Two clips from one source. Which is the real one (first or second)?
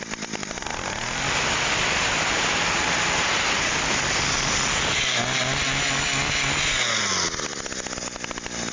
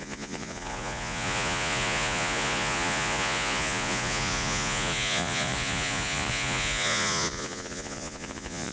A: first